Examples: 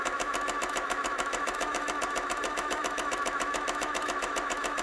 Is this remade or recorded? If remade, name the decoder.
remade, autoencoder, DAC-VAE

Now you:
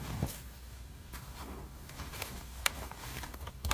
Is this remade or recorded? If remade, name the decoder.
remade, codec, DAC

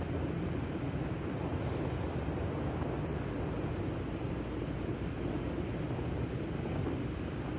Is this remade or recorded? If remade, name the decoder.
recorded